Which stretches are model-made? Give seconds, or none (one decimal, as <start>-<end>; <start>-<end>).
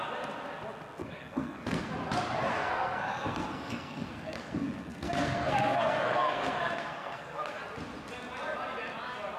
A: 1.0-1.9; 2.5-7.6